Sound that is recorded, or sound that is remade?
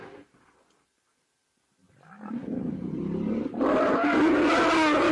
recorded